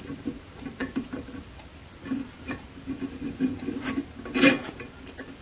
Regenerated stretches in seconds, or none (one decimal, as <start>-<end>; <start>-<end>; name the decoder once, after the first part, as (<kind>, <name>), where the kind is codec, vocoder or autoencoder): none